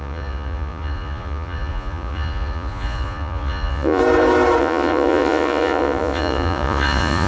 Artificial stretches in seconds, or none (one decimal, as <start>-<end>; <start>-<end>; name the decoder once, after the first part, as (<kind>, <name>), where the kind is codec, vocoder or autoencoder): 0.0-4.0 (vocoder, Vocos); 4.6-7.3